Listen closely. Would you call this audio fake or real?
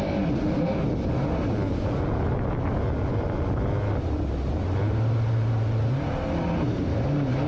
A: real